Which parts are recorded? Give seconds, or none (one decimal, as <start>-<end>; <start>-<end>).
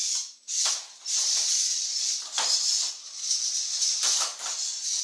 0.0-5.0